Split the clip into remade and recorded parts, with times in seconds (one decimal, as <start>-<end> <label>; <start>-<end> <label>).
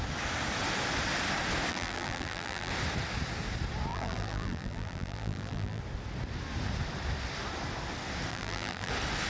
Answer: 0.0-1.7 recorded; 1.7-2.7 remade; 2.7-3.9 recorded; 3.9-5.8 remade; 5.8-8.3 recorded; 8.3-8.9 remade; 8.9-9.3 recorded